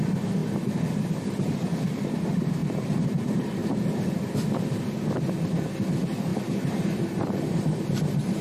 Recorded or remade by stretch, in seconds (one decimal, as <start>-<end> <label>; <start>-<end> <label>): 0.0-2.6 recorded; 2.6-3.8 remade; 3.8-6.3 recorded; 6.3-8.4 remade